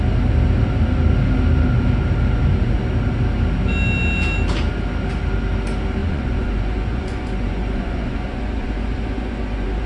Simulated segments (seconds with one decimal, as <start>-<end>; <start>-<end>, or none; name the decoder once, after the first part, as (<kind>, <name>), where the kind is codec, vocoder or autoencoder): 6.0-9.9 (vocoder, Vocos)

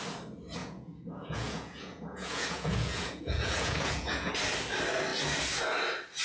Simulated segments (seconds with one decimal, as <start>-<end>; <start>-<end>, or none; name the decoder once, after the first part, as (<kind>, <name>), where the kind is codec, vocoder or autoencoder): 0.6-4.3 (vocoder, Vocos)

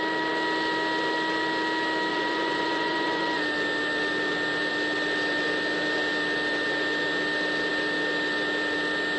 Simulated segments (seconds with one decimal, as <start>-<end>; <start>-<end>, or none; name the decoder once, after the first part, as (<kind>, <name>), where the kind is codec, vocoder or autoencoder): 2.1-3.4 (vocoder, Vocos)